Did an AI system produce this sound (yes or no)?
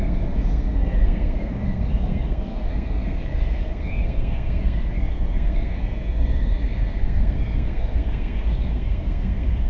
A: yes